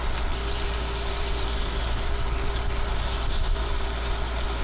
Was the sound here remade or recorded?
remade